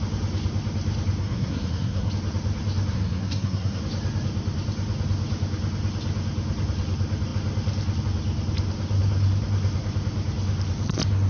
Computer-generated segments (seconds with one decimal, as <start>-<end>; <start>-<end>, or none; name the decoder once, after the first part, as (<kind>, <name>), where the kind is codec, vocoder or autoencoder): 1.2-2.1 (codec, SNAC); 2.9-3.8